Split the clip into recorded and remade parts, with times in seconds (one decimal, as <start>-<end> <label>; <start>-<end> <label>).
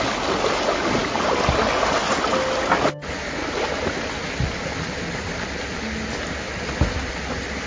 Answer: 0.0-7.7 recorded